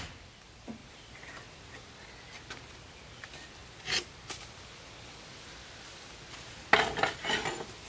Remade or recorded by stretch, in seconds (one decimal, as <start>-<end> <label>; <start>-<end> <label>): 0.0-0.8 recorded; 0.8-1.6 remade; 1.6-3.6 recorded; 3.6-4.4 remade; 4.4-7.9 recorded